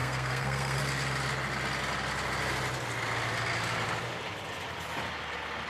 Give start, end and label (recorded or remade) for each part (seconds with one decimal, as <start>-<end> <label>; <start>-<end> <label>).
0.0-0.8 remade; 0.8-5.7 recorded